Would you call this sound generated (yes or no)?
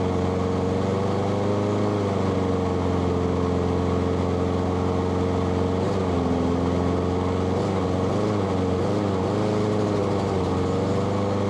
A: no